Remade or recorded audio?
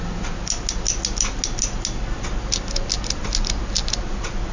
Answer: recorded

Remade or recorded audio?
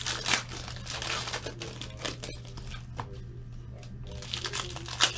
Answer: recorded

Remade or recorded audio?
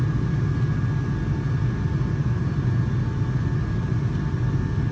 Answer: recorded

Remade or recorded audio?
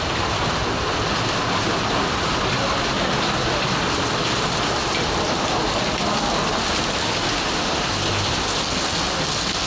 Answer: recorded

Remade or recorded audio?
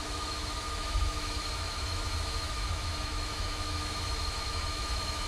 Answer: remade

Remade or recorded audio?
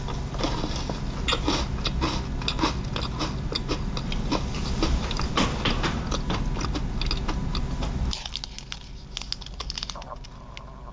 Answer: recorded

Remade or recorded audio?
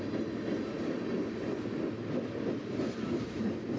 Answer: recorded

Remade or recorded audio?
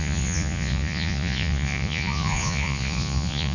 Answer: remade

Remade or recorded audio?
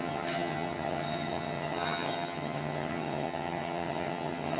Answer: remade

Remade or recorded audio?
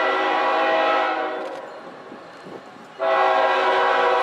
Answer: recorded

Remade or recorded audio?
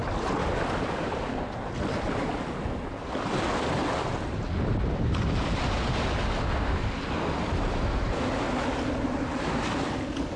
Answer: recorded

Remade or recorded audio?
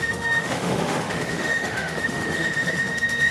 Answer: remade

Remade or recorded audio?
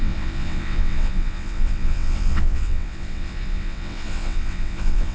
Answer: remade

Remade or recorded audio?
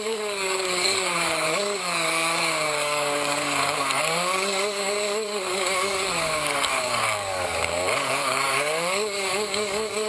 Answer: remade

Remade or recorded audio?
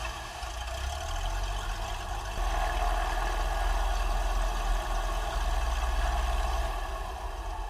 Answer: recorded